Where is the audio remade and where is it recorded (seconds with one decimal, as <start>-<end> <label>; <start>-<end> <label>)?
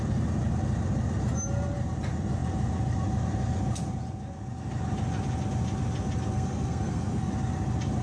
0.0-6.3 recorded; 6.3-7.3 remade; 7.3-8.0 recorded